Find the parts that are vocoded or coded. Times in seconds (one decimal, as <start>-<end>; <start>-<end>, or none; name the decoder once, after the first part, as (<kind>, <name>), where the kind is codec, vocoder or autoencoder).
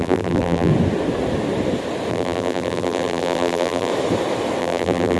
0.0-0.7 (vocoder, BigVGAN v2); 2.1-3.9; 4.6-5.2